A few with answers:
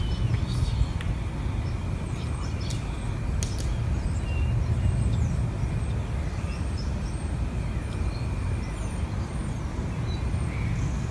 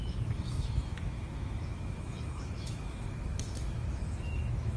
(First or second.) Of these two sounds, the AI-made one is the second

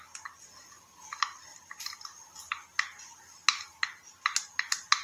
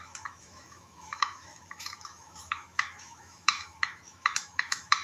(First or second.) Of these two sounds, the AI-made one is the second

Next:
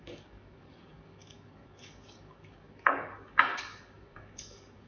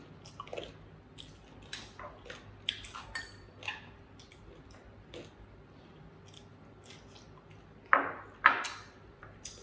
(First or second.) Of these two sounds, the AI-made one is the first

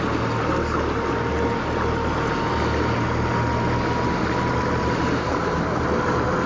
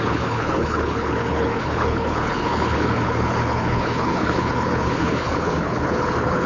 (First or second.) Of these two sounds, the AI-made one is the second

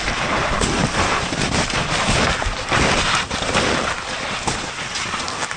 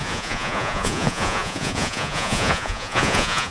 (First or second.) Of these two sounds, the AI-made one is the second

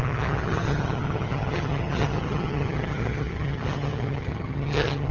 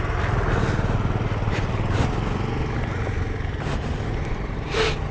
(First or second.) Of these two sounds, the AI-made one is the first